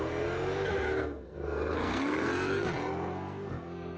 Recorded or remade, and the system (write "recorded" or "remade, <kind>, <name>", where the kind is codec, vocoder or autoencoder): remade, codec, SNAC